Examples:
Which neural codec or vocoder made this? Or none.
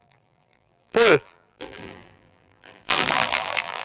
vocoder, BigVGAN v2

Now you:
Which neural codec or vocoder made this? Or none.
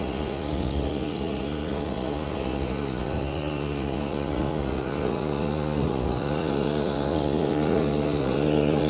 vocoder, Vocos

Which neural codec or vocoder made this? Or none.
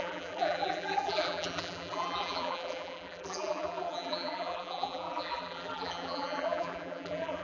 vocoder, BigVGAN v2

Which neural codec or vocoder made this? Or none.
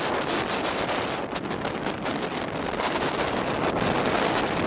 none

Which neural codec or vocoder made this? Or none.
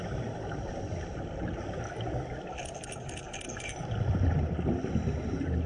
none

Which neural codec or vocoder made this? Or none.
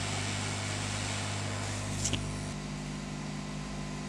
none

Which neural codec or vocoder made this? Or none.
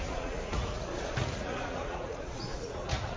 vocoder, Vocos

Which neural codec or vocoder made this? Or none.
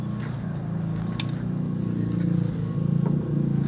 none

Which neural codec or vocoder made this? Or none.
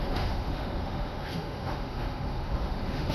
autoencoder, DAC-VAE